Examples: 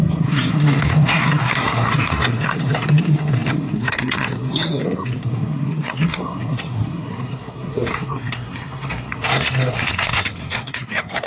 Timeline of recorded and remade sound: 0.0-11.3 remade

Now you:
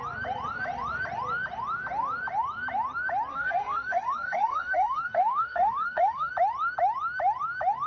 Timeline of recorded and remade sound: 0.0-3.3 recorded; 3.3-6.3 remade; 6.3-7.9 recorded

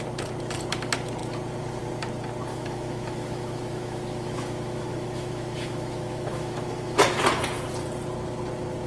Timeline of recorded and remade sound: 0.0-2.5 recorded; 2.5-7.2 remade; 7.2-8.9 recorded

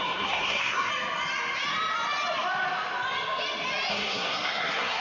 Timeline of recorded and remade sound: 0.0-0.9 remade; 0.9-3.9 recorded; 3.9-5.0 remade